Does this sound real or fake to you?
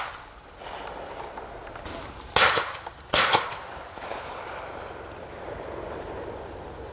real